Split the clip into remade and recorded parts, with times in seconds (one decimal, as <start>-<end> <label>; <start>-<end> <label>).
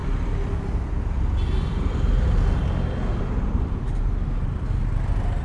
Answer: 0.0-5.4 recorded